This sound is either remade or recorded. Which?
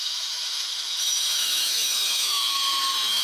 remade